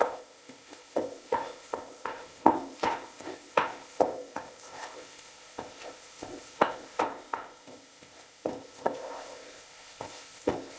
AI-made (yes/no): yes